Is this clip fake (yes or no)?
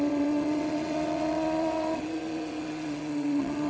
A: yes